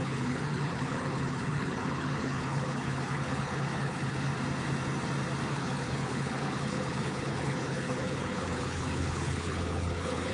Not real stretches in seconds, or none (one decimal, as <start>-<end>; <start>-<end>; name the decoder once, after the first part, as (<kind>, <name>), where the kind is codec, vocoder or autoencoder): 0.0-4.3 (codec, HILCodec); 5.5-10.3